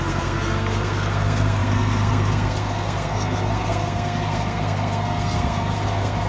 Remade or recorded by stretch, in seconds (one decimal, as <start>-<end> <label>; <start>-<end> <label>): 0.0-6.3 remade